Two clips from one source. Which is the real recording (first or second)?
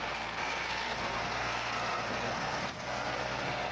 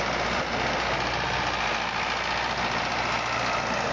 second